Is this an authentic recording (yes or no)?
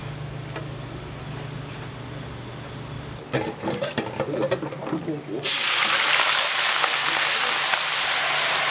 yes